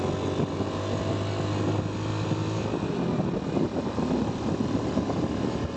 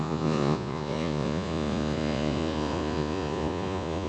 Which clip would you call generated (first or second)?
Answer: second